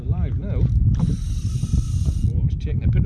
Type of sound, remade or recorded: recorded